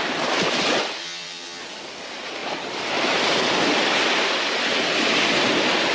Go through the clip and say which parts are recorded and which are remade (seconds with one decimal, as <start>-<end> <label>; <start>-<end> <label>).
0.0-1.0 recorded; 1.0-1.6 remade; 1.6-5.9 recorded